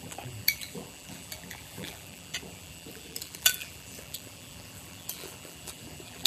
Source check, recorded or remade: remade